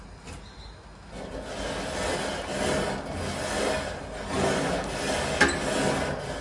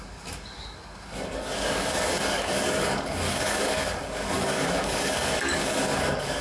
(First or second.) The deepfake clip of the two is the second